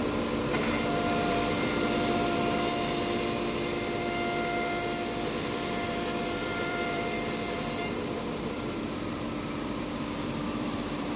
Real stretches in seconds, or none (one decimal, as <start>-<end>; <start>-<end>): 0.0-1.1; 2.7-5.2